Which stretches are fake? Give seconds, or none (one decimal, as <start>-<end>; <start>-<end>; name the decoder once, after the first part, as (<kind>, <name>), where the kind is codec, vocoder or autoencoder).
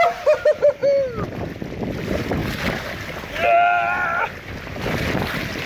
0.0-0.8 (vocoder, BigVGAN v2); 2.0-2.4